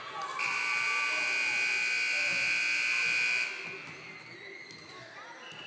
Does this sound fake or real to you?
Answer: real